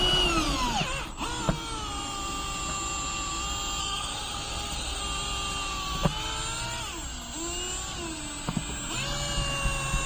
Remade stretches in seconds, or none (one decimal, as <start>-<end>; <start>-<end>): 3.8-5.0